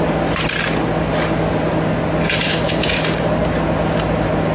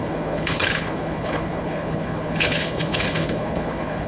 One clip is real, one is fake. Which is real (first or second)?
first